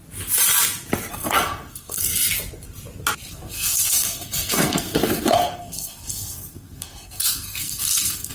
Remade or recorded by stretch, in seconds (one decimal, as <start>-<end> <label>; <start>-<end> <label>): 0.0-1.1 recorded; 1.1-2.1 remade; 2.1-3.3 recorded; 3.3-8.3 remade